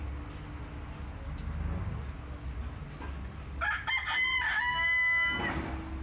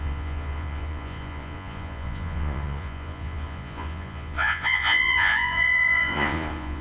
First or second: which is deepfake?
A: second